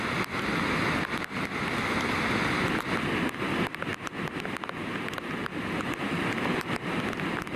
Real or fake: real